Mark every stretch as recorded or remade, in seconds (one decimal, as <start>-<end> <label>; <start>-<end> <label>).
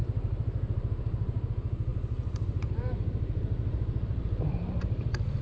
0.0-1.5 remade; 1.5-1.9 recorded; 1.9-5.4 remade